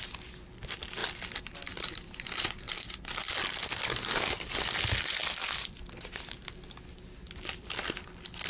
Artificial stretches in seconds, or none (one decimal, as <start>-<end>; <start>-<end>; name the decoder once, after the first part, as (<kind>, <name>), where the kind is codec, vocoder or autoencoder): 1.0-4.1 (vocoder, BigVGAN v2)